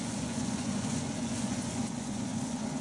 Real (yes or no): no